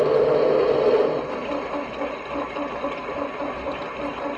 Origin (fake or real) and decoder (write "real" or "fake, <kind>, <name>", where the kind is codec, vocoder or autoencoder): real